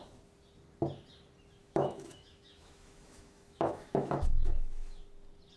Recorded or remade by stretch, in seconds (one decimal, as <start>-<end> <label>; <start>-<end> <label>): 0.0-1.6 recorded; 1.6-5.0 remade; 5.0-5.6 recorded